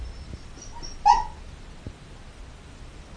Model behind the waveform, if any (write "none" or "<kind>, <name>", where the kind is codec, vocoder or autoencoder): none